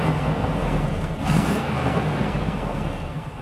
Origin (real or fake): fake